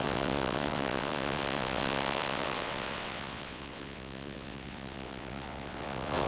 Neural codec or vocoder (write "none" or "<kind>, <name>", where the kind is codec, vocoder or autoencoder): vocoder, WaveNeXt